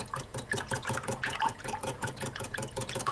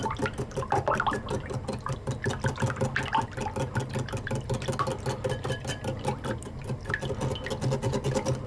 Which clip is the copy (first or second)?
first